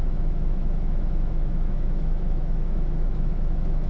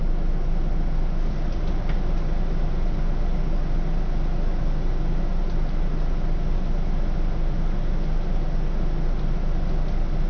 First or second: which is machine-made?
first